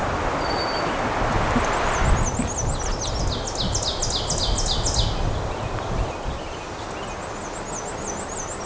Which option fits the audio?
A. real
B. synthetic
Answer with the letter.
A